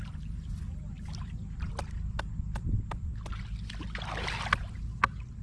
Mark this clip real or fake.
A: real